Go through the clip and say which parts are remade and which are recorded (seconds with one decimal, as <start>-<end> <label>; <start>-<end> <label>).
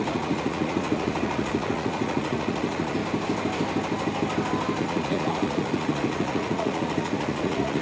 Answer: 0.0-3.0 remade; 3.0-4.8 recorded; 4.8-7.8 remade